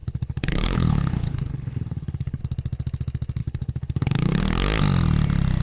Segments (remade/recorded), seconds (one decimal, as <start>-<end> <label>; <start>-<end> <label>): 0.0-2.4 remade; 2.4-3.4 recorded; 3.4-4.4 remade; 4.4-5.6 recorded